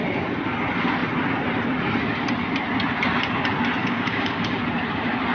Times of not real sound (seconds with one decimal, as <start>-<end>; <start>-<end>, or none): 3.8-4.6

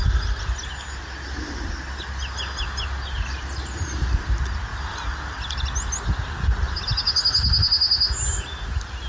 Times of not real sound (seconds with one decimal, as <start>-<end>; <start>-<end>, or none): none

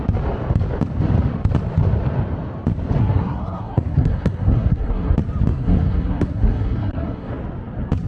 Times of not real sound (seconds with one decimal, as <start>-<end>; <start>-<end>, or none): 3.0-5.1; 5.5-7.3

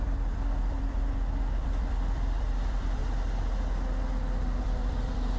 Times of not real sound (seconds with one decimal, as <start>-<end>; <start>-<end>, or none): 0.0-3.0; 4.6-5.4

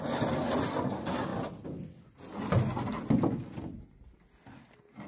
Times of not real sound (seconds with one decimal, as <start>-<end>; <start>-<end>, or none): none

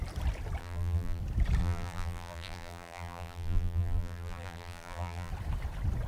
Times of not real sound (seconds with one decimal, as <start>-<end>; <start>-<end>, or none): 0.6-1.2; 1.6-5.3

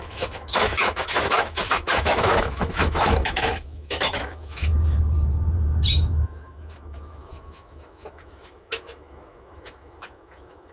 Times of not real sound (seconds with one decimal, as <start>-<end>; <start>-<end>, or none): 0.0-4.7; 5.9-10.7